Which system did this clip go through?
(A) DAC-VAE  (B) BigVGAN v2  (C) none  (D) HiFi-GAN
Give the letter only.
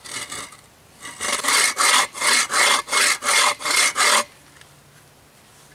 C